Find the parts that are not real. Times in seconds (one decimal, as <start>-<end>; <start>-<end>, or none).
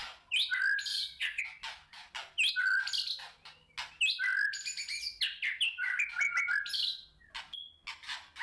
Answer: 0.9-1.4